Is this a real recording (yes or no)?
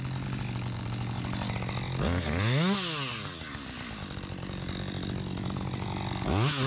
yes